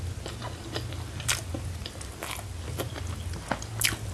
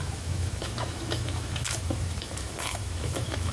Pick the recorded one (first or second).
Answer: first